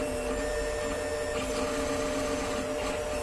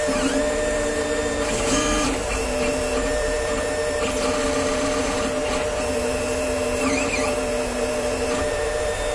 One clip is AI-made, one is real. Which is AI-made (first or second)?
second